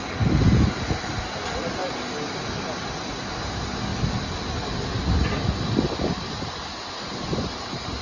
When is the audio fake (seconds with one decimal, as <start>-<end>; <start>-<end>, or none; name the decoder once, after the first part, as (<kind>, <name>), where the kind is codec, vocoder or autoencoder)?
none